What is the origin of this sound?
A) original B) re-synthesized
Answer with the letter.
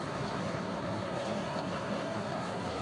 B